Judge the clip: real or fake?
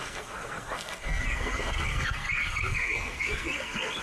fake